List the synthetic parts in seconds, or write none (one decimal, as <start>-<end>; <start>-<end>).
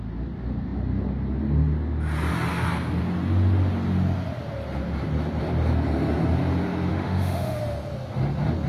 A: 6.9-7.6